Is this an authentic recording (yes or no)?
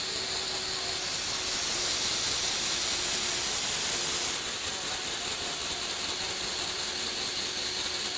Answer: yes